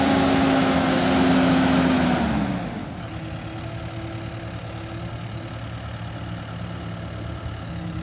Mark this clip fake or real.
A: real